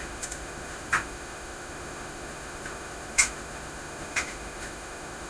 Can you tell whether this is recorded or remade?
remade